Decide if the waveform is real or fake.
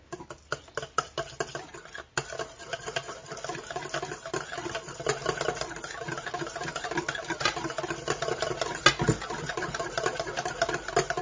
real